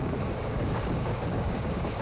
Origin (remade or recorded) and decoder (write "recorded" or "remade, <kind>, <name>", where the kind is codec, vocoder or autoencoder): remade, codec, DAC